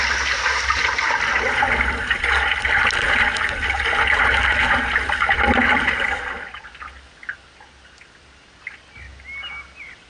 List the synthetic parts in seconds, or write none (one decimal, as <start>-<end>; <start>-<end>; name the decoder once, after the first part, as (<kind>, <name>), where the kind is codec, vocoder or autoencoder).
none